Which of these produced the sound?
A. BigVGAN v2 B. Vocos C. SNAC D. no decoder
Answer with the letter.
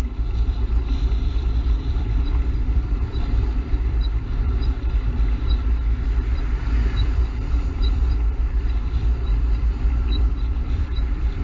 A